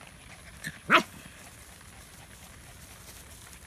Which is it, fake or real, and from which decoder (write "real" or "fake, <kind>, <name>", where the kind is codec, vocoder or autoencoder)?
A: real